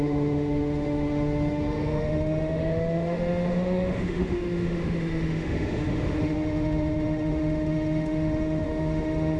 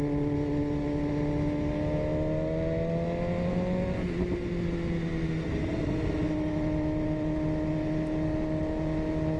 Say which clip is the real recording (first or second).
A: second